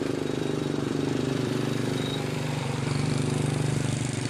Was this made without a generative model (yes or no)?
no